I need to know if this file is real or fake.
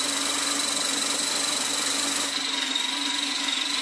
real